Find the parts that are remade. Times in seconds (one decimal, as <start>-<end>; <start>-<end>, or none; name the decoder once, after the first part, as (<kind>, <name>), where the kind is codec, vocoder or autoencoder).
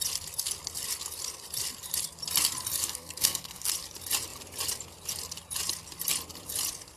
2.8-3.7 (codec, SNAC)